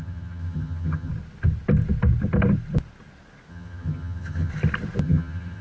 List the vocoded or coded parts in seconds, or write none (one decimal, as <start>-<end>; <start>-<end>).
0.0-1.1; 3.5-4.5; 5.0-5.6